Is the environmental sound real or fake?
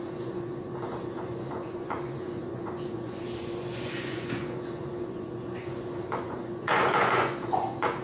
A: fake